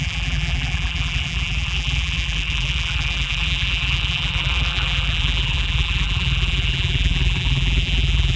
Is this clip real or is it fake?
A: fake